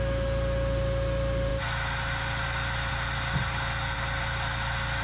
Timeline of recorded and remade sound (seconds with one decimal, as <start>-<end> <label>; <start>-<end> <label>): 0.0-5.0 recorded